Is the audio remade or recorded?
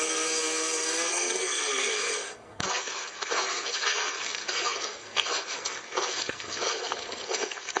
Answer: remade